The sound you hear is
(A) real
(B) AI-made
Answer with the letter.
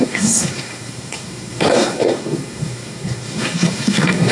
B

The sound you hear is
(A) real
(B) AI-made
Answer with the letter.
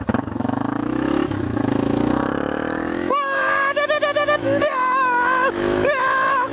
B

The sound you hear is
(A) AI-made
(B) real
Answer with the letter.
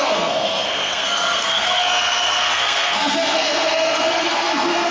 A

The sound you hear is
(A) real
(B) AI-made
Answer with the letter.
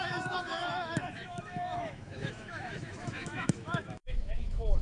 B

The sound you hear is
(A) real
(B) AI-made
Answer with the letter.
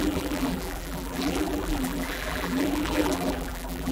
B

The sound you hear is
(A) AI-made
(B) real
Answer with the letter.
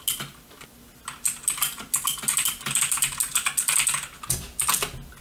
B